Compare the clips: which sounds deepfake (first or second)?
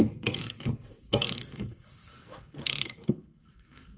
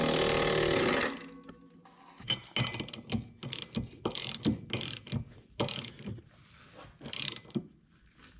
first